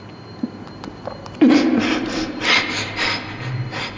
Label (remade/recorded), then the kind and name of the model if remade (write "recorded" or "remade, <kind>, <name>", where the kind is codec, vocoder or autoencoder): recorded